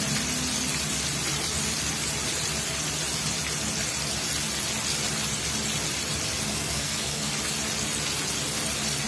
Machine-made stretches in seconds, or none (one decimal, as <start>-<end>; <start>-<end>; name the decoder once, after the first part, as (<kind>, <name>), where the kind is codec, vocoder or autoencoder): 6.5-7.3 (codec, SNAC)

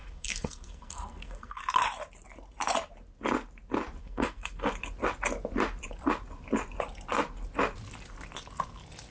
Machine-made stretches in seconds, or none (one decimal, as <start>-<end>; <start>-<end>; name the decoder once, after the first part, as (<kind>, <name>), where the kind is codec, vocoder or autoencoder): 0.0-1.6 (codec, SNAC); 4.0-4.7